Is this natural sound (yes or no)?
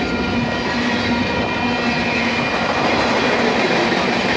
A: yes